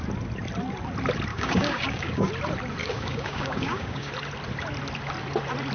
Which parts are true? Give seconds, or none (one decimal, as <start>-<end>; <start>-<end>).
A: 0.0-1.3; 2.3-2.8; 4.1-5.7